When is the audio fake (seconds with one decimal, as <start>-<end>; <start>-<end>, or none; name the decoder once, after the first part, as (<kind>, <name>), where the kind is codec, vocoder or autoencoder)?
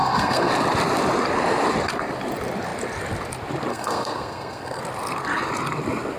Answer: 0.0-0.5 (codec, SNAC); 3.7-4.8